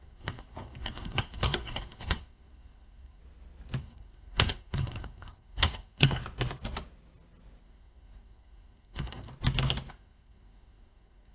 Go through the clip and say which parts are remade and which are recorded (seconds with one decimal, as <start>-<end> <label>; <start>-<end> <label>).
0.0-3.2 remade; 3.2-3.8 recorded; 3.8-6.2 remade; 6.2-7.6 recorded; 7.6-9.3 remade; 9.3-9.9 recorded; 9.9-11.3 remade